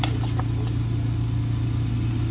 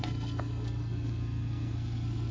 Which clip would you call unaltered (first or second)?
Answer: first